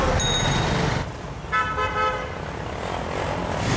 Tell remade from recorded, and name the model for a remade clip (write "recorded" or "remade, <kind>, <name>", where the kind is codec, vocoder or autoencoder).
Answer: recorded